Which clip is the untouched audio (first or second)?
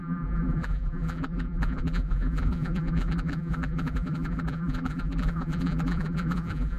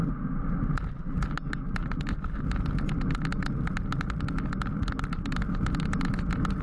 second